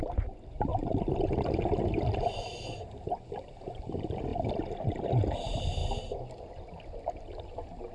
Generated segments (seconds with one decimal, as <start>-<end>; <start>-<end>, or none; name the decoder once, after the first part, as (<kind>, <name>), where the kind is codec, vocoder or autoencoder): 0.0-0.7 (vocoder, BigVGAN v2); 3.3-5.8; 6.5-7.9